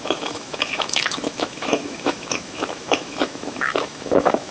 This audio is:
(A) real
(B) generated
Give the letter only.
B